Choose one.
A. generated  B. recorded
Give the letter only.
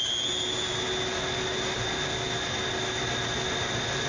B